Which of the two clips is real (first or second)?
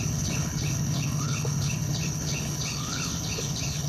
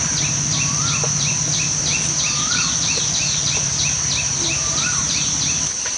second